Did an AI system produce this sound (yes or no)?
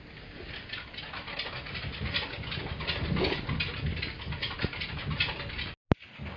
no